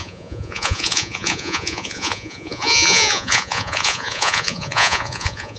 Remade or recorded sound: remade